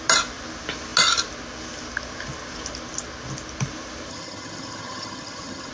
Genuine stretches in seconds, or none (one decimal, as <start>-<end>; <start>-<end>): 0.0-4.1